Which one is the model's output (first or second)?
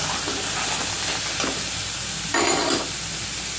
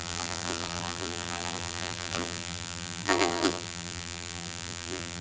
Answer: second